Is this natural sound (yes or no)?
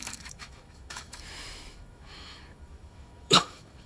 no